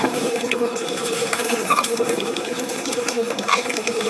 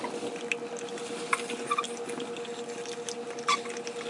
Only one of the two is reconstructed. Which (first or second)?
first